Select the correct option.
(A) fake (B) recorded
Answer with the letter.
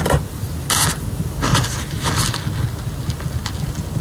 B